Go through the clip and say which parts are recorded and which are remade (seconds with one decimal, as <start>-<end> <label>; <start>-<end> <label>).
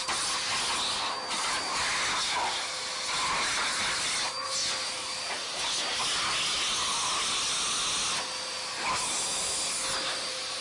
0.0-10.6 recorded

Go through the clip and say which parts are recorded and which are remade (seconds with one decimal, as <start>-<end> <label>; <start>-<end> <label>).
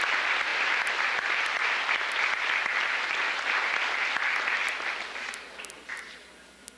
0.0-6.8 recorded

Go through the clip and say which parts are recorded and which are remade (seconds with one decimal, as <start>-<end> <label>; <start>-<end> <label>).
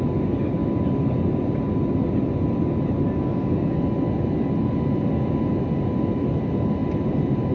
0.0-7.5 recorded